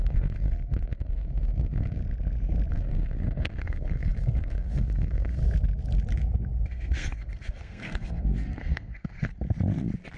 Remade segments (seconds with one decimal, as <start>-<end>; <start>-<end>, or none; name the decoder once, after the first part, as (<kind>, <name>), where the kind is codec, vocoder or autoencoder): 0.0-2.0 (codec, SNAC); 2.7-5.4; 6.6-9.3